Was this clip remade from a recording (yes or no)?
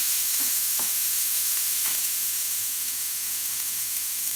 yes